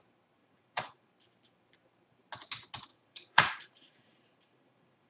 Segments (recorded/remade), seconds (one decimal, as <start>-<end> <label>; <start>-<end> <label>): 0.0-0.4 recorded; 0.4-1.1 remade; 1.1-2.9 recorded; 2.9-5.1 remade